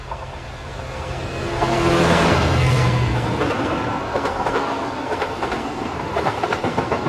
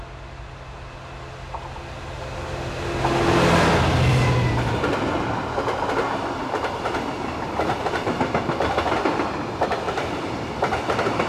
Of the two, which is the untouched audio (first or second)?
second